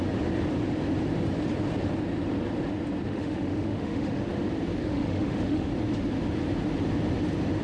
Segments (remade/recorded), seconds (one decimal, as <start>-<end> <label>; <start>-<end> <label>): 0.0-3.1 recorded; 3.1-4.3 remade; 4.3-4.8 recorded; 4.8-5.7 remade; 5.7-7.6 recorded